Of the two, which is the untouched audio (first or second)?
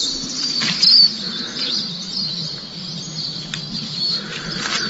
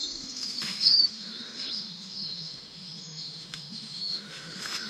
first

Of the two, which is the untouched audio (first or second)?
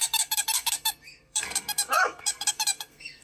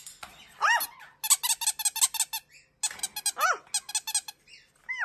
second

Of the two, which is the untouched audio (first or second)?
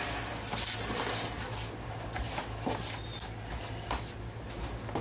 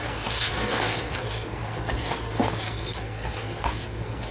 first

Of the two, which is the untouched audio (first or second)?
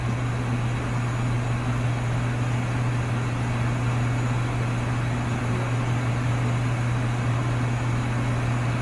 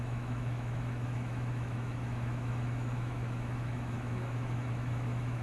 first